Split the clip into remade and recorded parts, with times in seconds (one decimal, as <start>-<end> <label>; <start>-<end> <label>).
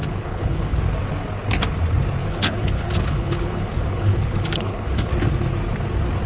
0.0-0.8 remade; 0.8-2.2 recorded; 2.2-5.1 remade; 5.1-6.3 recorded